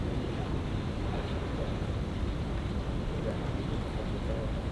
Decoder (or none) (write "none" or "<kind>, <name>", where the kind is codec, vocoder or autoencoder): none